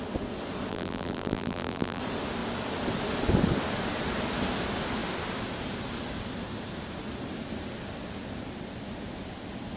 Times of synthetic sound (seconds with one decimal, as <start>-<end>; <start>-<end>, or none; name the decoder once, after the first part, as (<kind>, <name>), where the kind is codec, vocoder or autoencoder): 0.7-2.0 (vocoder, BigVGAN v2)